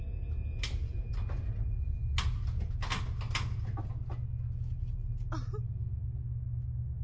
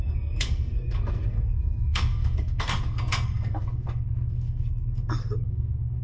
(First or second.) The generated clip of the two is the second